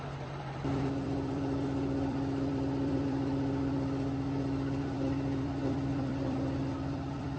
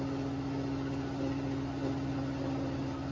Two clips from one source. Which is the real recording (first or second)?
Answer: second